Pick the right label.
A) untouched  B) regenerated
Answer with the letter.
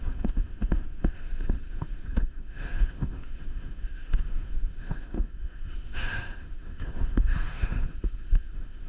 B